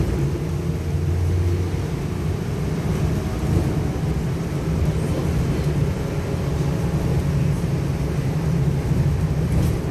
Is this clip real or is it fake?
real